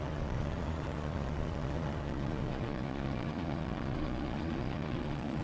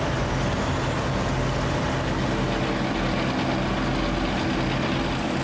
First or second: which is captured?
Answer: second